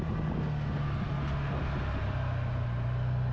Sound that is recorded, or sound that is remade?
recorded